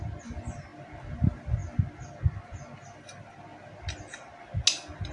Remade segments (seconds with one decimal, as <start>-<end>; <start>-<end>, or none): none